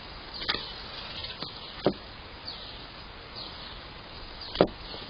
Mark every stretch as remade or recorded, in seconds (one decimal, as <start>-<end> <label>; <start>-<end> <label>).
0.0-5.1 recorded